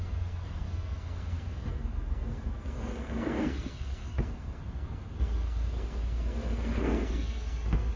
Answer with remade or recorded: remade